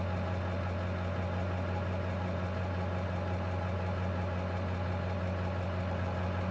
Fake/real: real